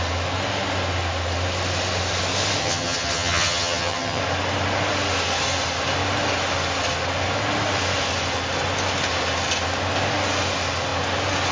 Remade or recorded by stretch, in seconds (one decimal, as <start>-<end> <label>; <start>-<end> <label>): 0.0-2.6 recorded; 2.6-4.2 remade; 4.2-11.5 recorded